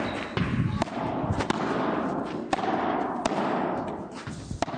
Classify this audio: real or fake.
real